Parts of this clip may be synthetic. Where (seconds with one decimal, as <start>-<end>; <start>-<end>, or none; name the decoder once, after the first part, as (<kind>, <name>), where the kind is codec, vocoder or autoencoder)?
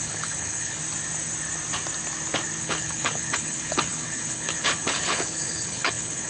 0.0-0.8 (codec, HILCodec); 2.6-6.3